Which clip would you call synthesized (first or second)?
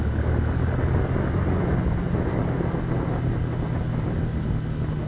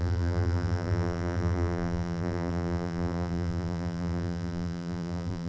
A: second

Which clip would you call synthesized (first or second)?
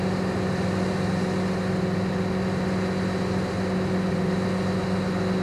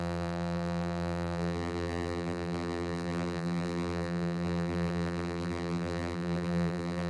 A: second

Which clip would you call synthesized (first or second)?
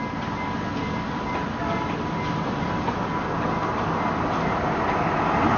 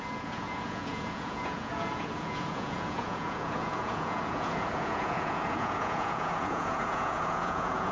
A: second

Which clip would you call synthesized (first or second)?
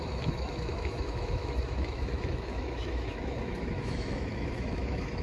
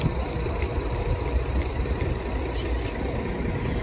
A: first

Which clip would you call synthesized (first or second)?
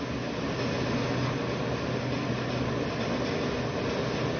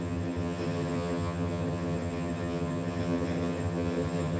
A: second